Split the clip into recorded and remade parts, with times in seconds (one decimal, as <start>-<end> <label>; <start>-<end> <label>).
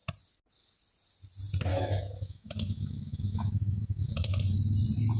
0.0-1.7 recorded; 1.7-4.4 remade; 4.4-5.2 recorded